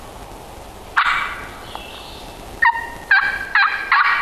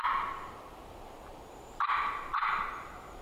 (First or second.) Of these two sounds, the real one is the first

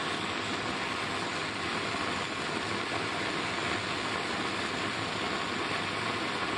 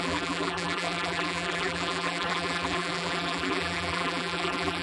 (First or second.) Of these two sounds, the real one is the first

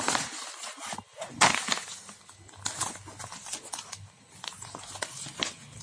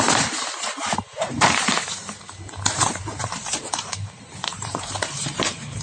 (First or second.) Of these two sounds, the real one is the first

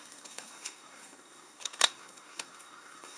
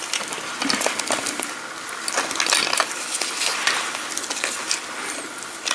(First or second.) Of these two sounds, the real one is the second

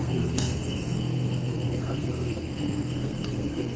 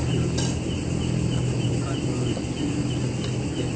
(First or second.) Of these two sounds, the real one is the second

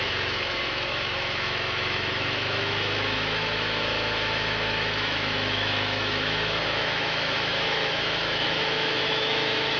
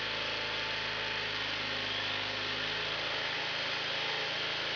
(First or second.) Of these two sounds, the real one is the second